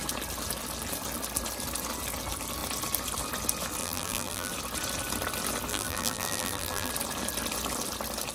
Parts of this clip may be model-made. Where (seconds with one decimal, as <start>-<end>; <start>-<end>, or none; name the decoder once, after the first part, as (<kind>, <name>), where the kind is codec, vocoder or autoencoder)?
3.8-4.5 (vocoder, BigVGAN v2); 5.7-6.9